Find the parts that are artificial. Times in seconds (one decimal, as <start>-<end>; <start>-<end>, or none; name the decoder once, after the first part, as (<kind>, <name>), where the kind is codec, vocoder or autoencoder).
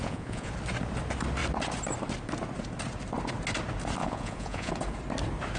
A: 0.0-0.5 (vocoder, Vocos); 4.0-4.7